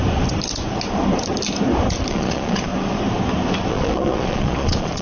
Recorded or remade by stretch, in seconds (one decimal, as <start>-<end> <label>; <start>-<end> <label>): 0.0-2.1 recorded; 2.1-2.7 remade; 2.7-3.7 recorded; 3.7-5.0 remade